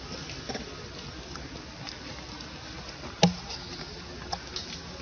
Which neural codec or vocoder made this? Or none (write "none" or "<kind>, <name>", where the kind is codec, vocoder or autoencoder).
none